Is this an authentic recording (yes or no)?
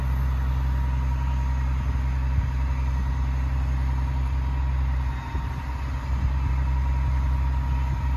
yes